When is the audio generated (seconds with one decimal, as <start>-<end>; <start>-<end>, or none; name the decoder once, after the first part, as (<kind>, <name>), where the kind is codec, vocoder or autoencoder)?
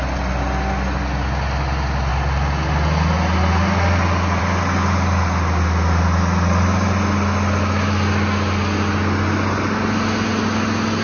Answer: none